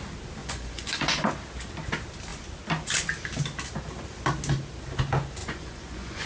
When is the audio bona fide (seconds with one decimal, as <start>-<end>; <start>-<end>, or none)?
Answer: 0.0-0.4; 1.3-5.4